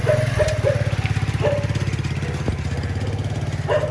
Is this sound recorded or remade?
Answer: recorded